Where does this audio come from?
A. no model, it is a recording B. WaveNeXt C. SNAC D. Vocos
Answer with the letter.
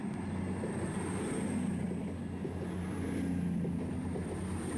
A